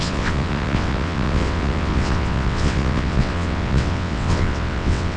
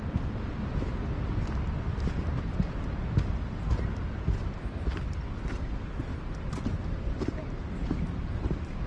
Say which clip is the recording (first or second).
second